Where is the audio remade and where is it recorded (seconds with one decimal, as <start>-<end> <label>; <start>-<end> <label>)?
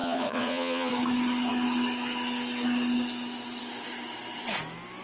0.0-0.9 remade; 0.9-5.0 recorded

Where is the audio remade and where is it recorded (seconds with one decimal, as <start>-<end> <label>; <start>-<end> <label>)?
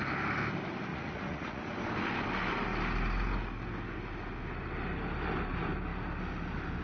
0.0-0.9 recorded; 0.9-1.6 remade; 1.6-6.8 recorded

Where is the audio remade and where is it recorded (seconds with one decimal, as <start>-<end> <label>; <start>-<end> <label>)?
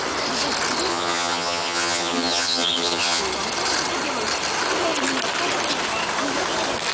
0.0-0.9 recorded; 0.9-3.2 remade; 3.2-6.9 recorded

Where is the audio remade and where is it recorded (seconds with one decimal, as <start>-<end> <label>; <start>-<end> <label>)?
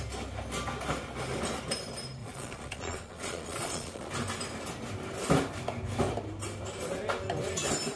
0.0-2.2 recorded; 2.2-4.1 remade; 4.1-8.0 recorded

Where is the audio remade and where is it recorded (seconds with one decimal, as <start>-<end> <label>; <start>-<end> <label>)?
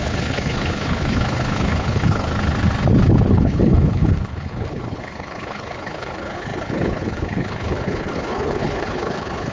0.0-2.3 remade; 2.3-3.3 recorded; 3.3-9.5 remade